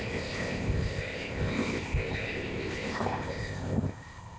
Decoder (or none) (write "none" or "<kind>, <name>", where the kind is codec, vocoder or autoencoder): codec, ZipCodec